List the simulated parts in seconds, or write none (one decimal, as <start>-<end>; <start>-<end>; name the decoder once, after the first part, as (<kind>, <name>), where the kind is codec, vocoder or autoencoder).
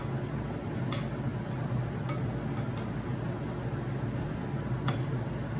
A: none